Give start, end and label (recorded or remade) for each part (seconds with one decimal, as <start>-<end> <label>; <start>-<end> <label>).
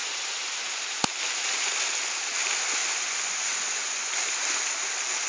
0.0-0.7 remade; 0.7-2.8 recorded; 2.8-4.1 remade; 4.1-5.3 recorded